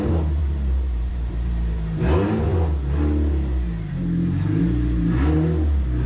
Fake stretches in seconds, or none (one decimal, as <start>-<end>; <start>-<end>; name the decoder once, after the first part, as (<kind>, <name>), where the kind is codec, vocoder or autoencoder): 0.4-2.0 (vocoder, BigVGAN v2)